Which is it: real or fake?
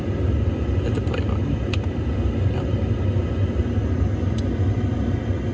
real